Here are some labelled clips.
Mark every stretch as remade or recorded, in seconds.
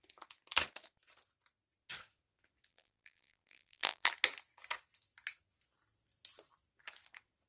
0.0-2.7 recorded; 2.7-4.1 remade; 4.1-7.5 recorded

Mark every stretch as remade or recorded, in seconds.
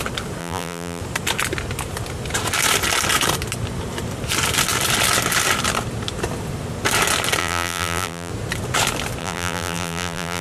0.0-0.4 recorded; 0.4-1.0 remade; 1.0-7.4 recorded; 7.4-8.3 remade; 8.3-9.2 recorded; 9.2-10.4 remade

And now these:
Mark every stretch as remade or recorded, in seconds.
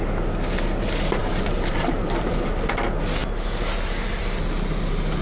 0.0-1.2 recorded; 1.2-2.5 remade; 2.5-5.2 recorded